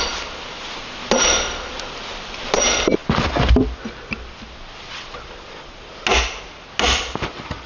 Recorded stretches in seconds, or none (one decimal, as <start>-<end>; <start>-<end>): 0.0-7.7